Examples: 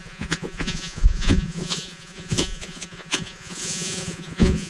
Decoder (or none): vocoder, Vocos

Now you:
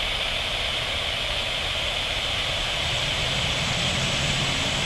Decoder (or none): none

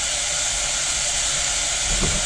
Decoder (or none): none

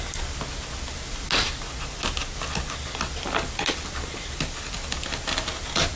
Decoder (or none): none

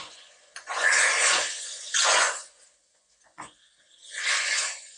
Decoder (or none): vocoder, Vocos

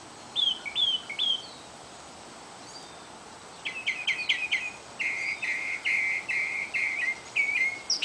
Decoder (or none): none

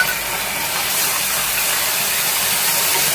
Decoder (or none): none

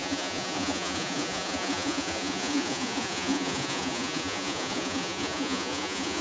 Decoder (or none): vocoder, Vocos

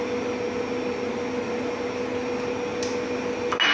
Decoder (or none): none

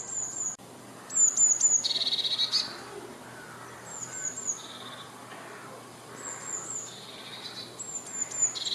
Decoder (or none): none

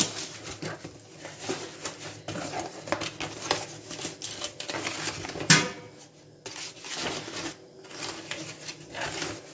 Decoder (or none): none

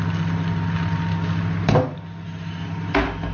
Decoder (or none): none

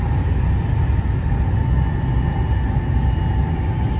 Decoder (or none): none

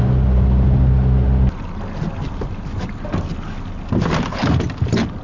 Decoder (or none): none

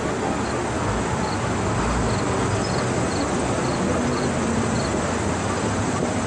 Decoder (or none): none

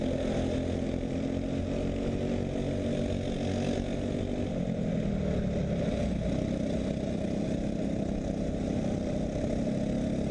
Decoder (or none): none